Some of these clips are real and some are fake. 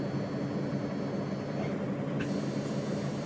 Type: real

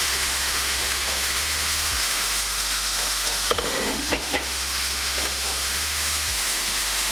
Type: fake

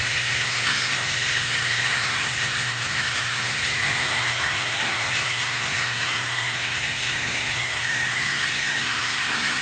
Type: fake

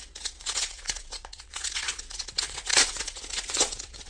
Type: fake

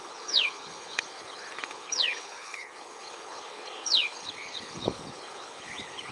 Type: fake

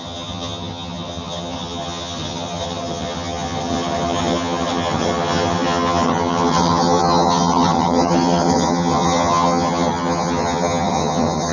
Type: fake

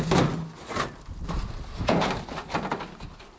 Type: real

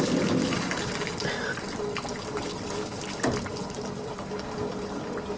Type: real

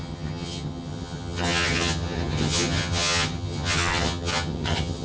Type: fake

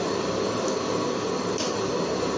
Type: real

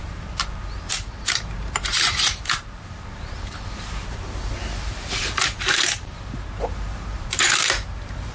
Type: fake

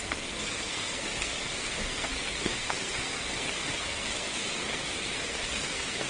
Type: fake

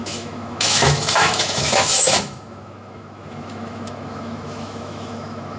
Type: fake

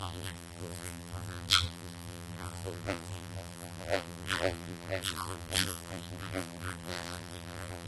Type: fake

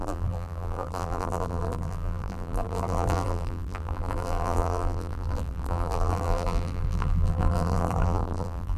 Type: fake